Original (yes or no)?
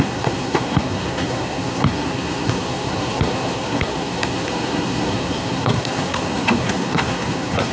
no